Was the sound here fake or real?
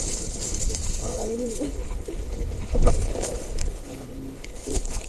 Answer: fake